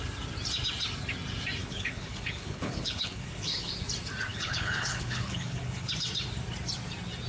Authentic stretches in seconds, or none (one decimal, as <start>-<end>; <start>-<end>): 0.0-1.6; 3.7-4.3; 5.9-7.3